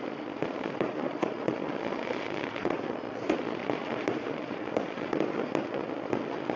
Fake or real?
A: fake